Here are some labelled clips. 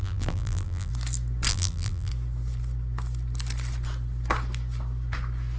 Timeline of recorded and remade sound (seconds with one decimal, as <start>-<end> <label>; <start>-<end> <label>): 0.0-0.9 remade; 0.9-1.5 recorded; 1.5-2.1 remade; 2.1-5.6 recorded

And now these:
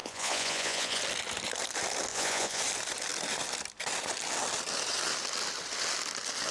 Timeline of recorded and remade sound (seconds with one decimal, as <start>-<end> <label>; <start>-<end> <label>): 0.0-1.0 remade; 1.0-2.1 recorded; 2.1-2.6 remade; 2.6-6.5 recorded

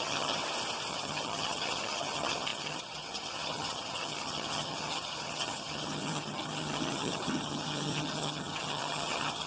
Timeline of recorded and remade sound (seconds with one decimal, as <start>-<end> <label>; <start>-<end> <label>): 0.0-0.4 remade; 0.4-0.9 recorded; 0.9-9.5 remade

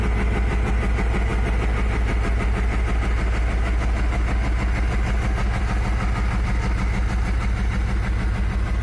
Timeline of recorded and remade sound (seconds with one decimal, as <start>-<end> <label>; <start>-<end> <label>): 0.0-8.8 recorded

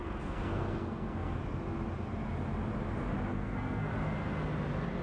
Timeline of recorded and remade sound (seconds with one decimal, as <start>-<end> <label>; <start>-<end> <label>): 0.0-1.4 remade; 1.4-3.3 recorded; 3.3-3.9 remade; 3.9-5.0 recorded

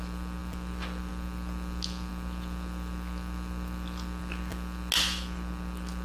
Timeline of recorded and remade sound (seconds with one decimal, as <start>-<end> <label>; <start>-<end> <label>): 0.0-6.0 recorded

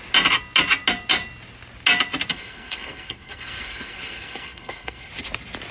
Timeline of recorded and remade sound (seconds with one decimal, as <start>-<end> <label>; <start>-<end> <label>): 0.0-2.3 recorded; 2.3-5.1 remade; 5.1-5.7 recorded